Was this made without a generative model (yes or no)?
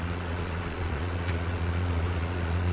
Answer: no